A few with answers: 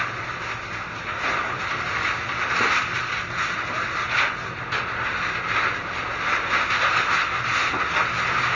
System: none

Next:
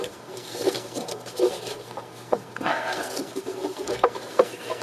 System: codec, SNAC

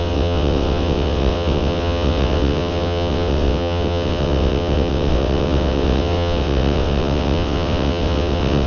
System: vocoder, WaveNeXt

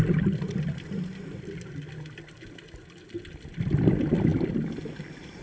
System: none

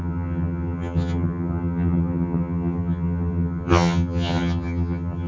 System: vocoder, HiFi-GAN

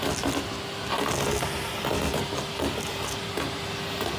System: none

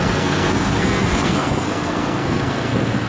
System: codec, SNAC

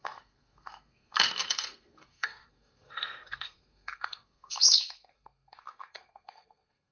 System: codec, SNAC